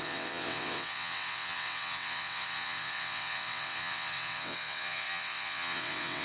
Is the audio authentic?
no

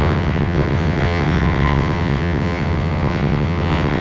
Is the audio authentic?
no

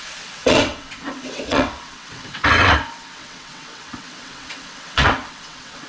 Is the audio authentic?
no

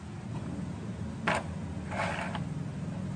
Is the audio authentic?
yes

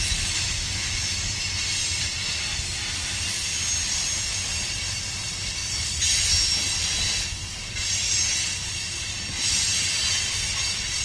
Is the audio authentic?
yes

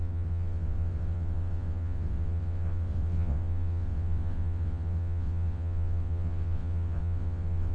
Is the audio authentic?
no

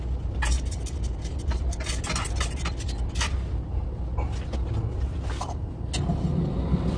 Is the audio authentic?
yes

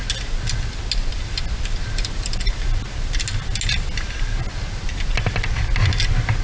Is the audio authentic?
yes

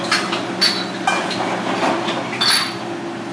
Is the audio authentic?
yes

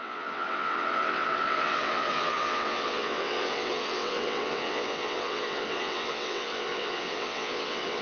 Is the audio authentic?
no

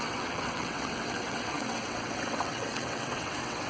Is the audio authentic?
no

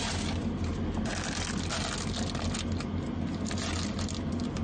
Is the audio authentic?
yes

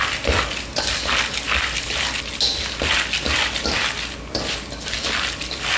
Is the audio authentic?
yes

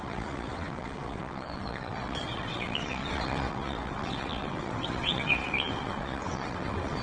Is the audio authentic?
no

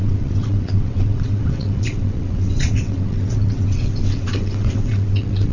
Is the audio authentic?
no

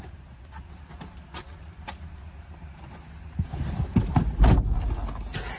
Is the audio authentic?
yes